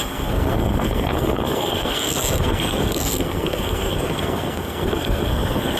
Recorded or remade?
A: remade